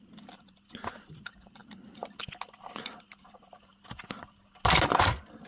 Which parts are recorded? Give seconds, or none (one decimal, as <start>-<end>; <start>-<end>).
0.0-5.5